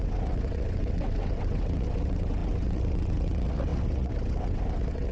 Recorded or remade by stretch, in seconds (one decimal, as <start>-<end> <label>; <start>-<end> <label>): 0.0-5.1 remade